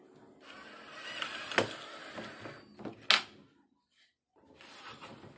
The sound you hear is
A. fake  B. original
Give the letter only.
B